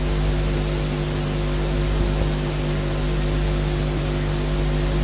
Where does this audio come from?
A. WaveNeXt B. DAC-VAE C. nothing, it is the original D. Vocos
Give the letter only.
C